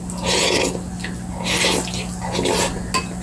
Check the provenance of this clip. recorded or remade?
recorded